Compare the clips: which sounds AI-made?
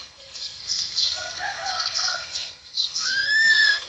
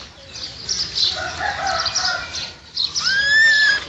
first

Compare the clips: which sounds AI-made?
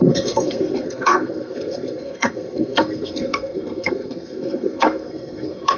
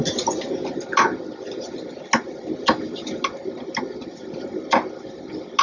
first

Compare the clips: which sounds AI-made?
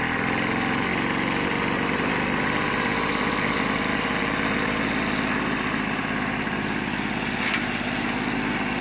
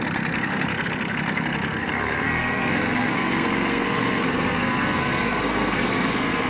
second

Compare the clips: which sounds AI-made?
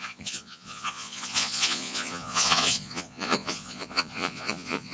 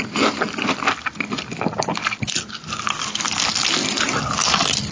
first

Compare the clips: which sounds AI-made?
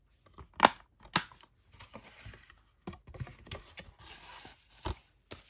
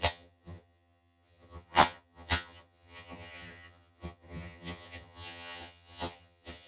second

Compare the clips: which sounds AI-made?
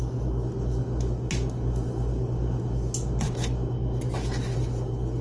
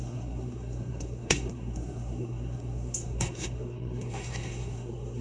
second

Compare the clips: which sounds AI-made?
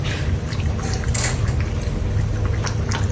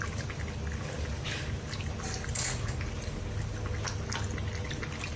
first